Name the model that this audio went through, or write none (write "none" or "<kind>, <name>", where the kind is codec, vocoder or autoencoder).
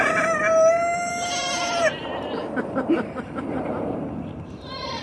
vocoder, BigVGAN v2